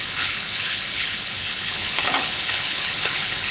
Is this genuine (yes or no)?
no